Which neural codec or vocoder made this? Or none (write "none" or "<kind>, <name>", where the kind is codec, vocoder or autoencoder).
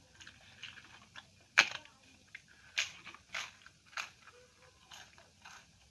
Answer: none